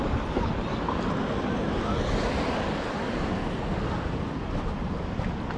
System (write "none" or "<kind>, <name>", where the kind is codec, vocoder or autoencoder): none